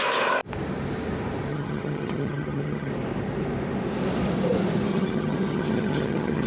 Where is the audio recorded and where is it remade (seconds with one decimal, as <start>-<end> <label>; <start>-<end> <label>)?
0.0-1.5 recorded; 1.5-2.9 remade; 2.9-4.9 recorded; 4.9-6.5 remade